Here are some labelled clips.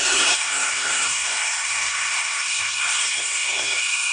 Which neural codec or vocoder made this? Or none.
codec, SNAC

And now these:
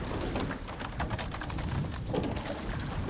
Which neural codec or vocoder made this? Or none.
none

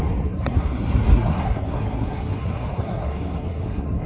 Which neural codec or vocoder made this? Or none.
codec, SNAC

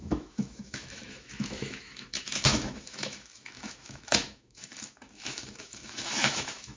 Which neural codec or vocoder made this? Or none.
autoencoder, DAC-VAE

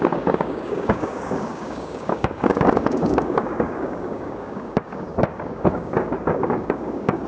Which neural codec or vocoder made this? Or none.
codec, DAC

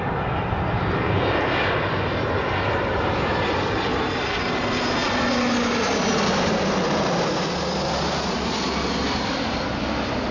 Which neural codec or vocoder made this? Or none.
none